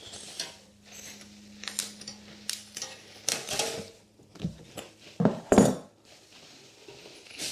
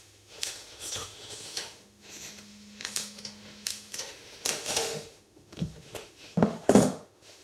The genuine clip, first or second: first